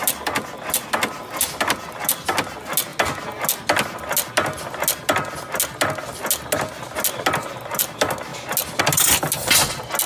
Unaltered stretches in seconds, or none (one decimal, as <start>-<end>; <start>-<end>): 0.0-10.1

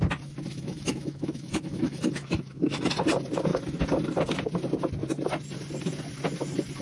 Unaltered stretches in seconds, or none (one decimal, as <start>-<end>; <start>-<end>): 0.0-0.5; 2.8-6.8